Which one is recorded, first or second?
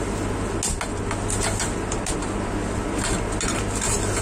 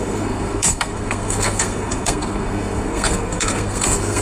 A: first